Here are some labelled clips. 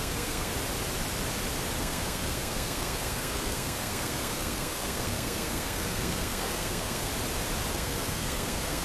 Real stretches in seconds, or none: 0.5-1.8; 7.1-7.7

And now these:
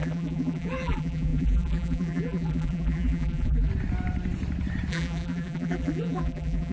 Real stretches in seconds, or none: 3.7-4.9

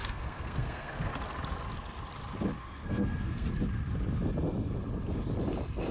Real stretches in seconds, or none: 1.1-2.6; 3.5-5.9

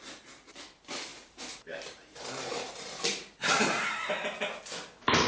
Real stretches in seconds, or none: 0.0-1.1; 4.1-5.3

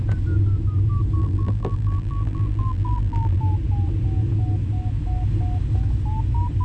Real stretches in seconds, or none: 0.0-1.2; 3.4-6.6

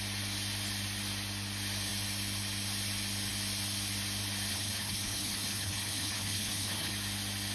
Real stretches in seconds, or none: 0.0-4.5; 6.9-7.5

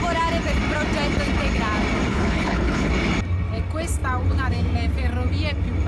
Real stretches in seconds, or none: 0.0-2.1; 2.9-5.9